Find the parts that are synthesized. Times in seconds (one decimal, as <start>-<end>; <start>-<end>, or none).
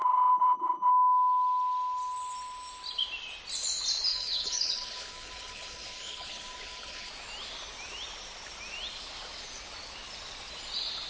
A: 0.0-0.9; 4.1-7.1